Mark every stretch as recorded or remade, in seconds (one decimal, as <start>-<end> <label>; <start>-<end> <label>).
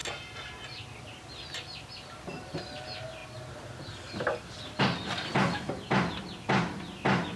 0.0-7.4 recorded